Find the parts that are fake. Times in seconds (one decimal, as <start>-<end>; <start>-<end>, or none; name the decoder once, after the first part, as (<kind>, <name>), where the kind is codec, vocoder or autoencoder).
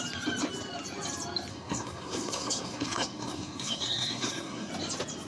1.5-4.7 (codec, SNAC)